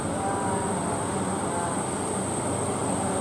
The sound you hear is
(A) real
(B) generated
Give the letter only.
A